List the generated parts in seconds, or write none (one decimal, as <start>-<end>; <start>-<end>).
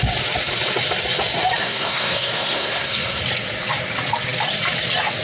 1.6-3.2